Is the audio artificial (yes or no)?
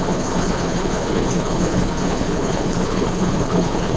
yes